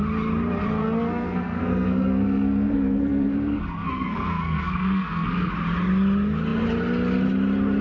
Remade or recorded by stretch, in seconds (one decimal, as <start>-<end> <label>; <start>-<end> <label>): 0.0-0.8 recorded; 0.8-5.5 remade; 5.5-7.8 recorded